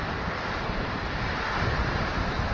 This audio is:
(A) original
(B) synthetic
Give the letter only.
A